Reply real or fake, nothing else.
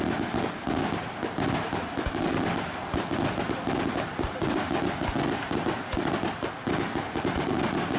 real